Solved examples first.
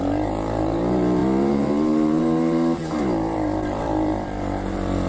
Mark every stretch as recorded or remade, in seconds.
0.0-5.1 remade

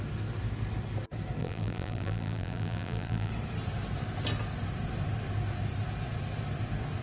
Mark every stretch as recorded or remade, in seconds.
0.0-1.4 recorded; 1.4-3.3 remade; 3.3-7.0 recorded

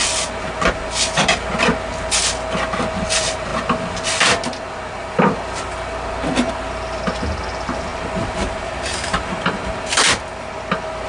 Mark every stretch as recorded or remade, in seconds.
0.0-7.9 recorded; 7.9-9.6 remade; 9.6-11.1 recorded